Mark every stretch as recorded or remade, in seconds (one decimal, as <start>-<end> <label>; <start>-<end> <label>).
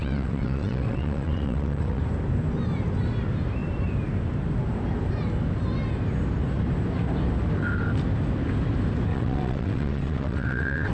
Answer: 0.0-2.0 remade; 2.0-9.1 recorded; 9.1-10.9 remade